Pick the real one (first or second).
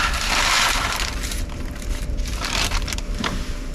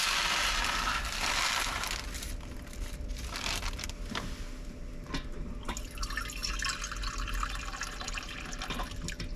second